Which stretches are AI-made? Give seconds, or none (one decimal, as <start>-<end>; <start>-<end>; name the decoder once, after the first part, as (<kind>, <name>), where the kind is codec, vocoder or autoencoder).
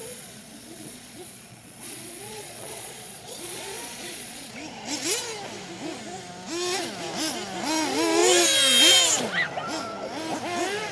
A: 0.0-4.5 (vocoder, Vocos)